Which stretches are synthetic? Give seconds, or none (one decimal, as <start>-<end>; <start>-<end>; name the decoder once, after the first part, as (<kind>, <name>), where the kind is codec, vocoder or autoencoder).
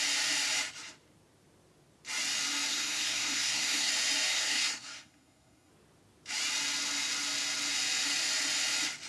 2.7-3.9 (codec, SNAC); 4.3-5.7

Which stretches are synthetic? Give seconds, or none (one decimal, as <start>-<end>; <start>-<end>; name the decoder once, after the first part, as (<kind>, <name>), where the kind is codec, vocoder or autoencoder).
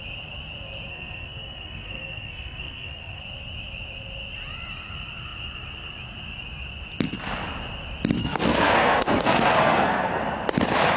0.9-3.2 (codec, SNAC); 8.2-10.2